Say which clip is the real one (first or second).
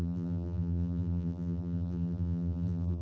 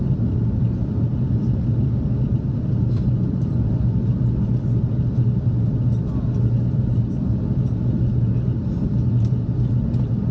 second